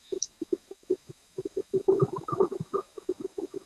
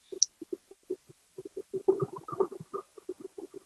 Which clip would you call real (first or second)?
second